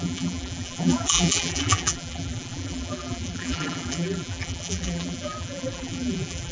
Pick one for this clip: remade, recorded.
remade